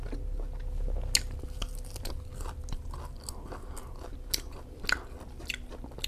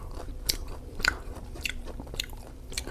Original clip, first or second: first